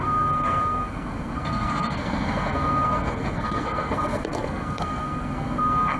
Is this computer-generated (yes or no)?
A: yes